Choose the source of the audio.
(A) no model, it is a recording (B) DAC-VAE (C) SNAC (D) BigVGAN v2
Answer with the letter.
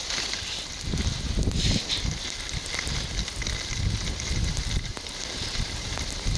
A